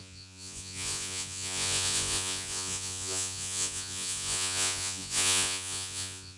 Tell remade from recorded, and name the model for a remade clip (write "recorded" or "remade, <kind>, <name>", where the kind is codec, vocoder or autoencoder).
remade, vocoder, Vocos